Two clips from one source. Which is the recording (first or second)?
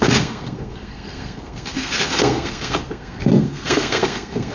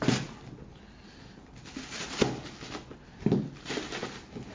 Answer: second